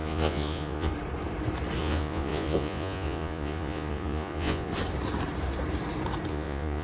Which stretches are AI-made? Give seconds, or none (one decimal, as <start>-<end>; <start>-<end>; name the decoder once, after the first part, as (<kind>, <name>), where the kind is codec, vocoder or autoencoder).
0.0-0.9 (vocoder, Vocos); 1.8-4.7; 6.3-6.8